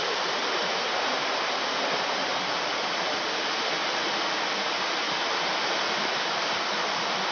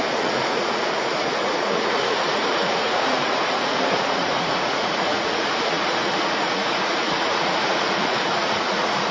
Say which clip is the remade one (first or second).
second